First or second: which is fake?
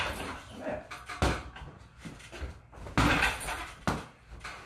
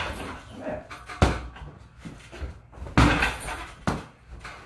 first